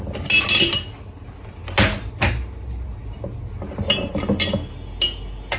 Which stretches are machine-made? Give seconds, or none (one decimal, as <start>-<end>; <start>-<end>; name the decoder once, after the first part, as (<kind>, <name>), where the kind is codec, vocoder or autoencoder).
none